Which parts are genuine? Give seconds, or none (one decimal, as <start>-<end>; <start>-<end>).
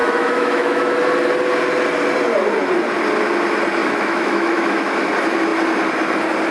1.0-3.8; 5.1-6.5